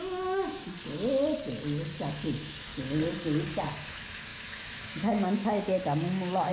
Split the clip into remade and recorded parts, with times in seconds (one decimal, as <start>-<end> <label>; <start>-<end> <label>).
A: 0.0-0.6 remade; 0.6-2.1 recorded; 2.1-2.7 remade; 2.7-3.9 recorded; 3.9-6.5 remade